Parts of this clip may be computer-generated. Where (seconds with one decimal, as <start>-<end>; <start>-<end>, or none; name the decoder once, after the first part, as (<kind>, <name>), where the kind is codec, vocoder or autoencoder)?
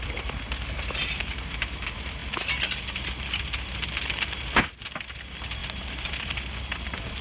none